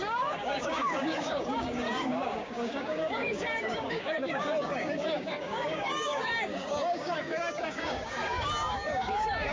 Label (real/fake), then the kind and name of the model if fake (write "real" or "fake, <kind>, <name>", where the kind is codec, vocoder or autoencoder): fake, codec, DAC